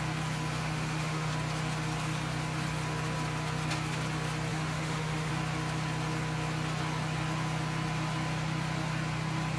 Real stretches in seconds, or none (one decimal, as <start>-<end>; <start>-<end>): 0.0-0.6; 1.3-4.5; 5.3-9.6